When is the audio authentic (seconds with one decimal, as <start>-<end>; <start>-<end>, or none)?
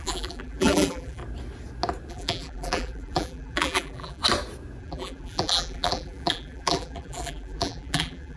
1.2-2.1; 4.2-4.8